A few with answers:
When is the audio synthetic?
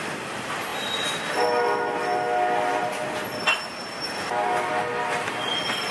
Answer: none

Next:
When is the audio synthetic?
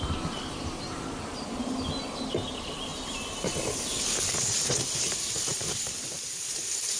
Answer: none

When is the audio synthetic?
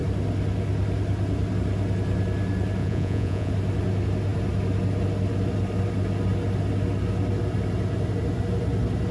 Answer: 2.8-3.5 (vocoder, Vocos)